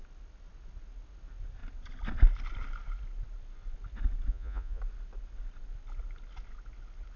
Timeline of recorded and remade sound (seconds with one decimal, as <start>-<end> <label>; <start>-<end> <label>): 0.0-4.3 recorded; 4.3-4.8 remade; 4.8-7.2 recorded